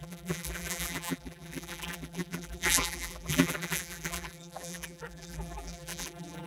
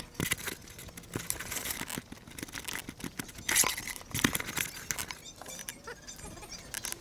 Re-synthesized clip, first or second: first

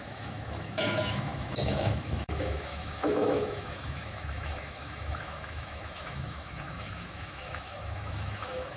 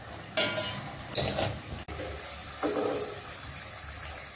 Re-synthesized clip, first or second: first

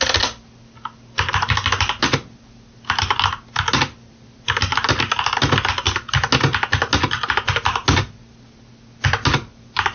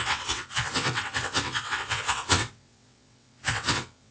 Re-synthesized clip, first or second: second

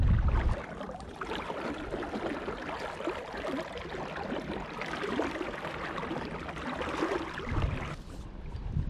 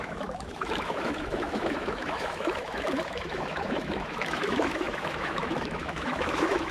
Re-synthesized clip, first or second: second